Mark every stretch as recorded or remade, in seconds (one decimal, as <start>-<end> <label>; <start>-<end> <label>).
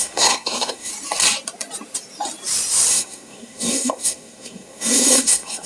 0.0-0.9 remade; 0.9-2.9 recorded; 2.9-5.7 remade